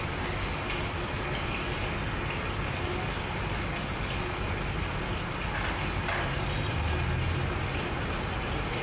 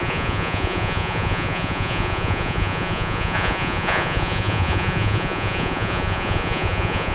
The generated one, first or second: second